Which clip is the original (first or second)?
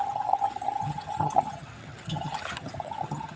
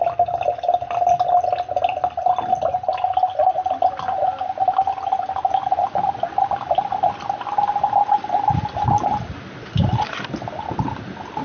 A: second